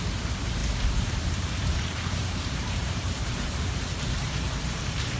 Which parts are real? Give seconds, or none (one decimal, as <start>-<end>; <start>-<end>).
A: 0.0-0.6; 3.7-4.2